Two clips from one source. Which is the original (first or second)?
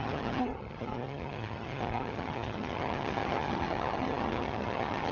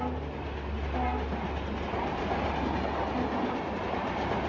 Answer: second